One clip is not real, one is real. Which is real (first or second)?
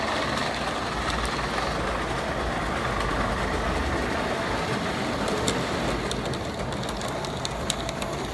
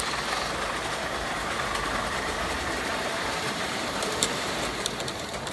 first